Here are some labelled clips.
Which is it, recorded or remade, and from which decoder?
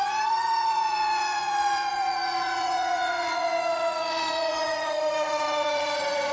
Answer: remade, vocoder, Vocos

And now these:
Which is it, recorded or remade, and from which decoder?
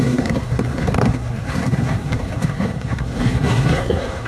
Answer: remade, codec, SNAC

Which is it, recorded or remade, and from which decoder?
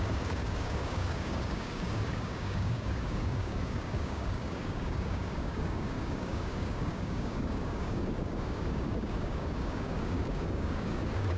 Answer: remade, codec, DAC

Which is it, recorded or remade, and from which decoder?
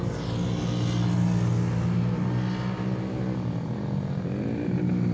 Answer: recorded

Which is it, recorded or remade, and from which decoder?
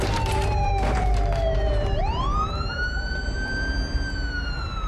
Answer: remade, vocoder, BigVGAN v2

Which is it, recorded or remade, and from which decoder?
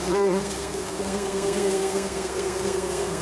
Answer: remade, codec, SNAC